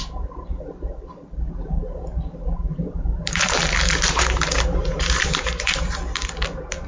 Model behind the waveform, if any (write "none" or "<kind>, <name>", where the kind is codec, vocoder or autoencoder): vocoder, BigVGAN v2